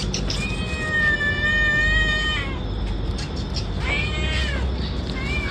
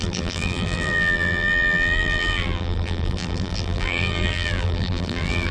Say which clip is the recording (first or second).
first